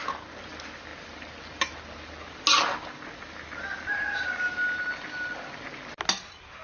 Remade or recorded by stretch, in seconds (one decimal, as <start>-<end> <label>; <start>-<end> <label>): 0.0-6.6 recorded